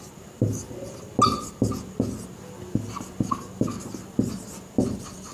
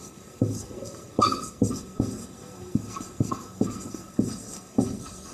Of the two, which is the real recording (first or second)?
first